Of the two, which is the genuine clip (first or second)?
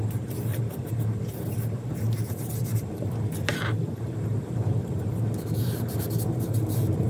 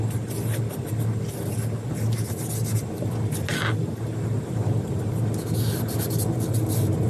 second